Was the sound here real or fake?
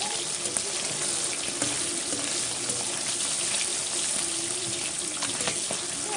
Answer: real